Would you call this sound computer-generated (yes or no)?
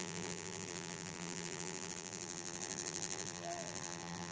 yes